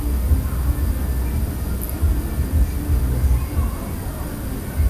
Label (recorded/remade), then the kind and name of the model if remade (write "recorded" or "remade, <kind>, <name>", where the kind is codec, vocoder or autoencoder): recorded